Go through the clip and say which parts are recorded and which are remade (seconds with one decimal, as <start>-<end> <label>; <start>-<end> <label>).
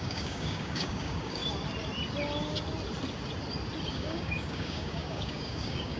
0.0-1.4 remade; 1.4-3.9 recorded; 3.9-6.0 remade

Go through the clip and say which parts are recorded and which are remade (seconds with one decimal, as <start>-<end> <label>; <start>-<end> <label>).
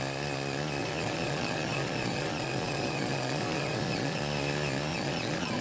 0.0-0.8 recorded; 0.8-4.2 remade; 4.2-4.9 recorded; 4.9-5.6 remade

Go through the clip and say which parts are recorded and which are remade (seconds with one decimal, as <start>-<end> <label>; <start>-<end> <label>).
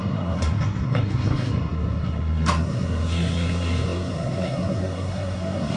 0.0-5.8 remade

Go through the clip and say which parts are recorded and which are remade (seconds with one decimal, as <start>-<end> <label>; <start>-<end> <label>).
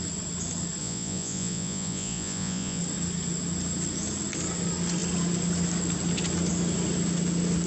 0.0-0.8 recorded; 0.8-2.8 remade; 2.8-7.7 recorded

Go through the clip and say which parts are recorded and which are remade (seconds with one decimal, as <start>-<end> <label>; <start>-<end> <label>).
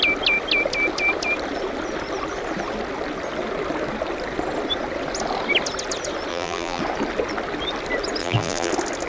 0.0-6.3 recorded; 6.3-6.8 remade; 6.8-8.2 recorded; 8.2-8.7 remade; 8.7-9.1 recorded